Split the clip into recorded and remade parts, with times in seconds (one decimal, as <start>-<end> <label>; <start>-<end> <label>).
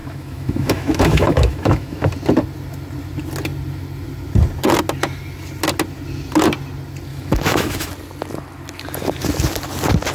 0.0-2.1 remade; 2.1-7.1 recorded; 7.1-7.9 remade; 7.9-10.1 recorded